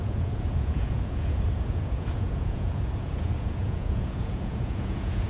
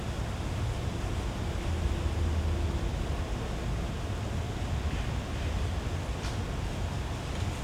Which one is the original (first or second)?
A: second